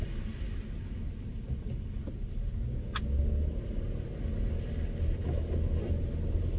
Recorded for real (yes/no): yes